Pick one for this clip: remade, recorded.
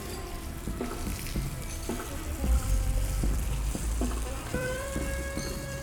remade